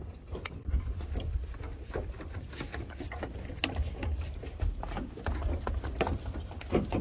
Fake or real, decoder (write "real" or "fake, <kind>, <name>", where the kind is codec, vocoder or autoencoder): real